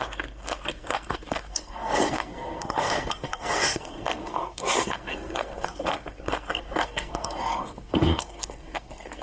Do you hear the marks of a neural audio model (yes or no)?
yes